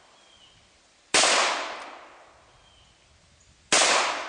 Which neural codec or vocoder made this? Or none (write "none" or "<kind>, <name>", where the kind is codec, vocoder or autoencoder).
none